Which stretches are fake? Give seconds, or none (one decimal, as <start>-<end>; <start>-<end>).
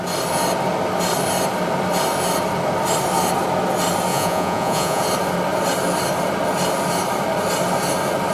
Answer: 4.1-5.0